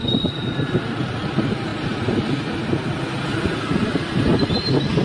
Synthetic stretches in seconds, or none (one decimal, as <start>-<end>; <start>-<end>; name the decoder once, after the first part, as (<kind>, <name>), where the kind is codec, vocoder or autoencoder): none